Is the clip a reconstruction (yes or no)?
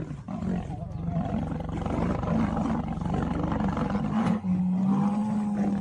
no